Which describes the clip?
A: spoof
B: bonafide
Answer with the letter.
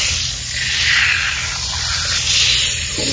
B